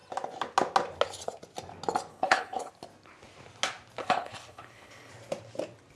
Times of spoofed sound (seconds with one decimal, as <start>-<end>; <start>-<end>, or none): 2.1-2.7; 4.0-5.1